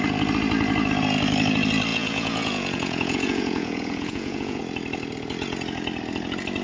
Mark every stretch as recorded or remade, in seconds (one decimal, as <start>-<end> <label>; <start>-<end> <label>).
0.0-1.9 recorded; 1.9-4.6 remade; 4.6-6.6 recorded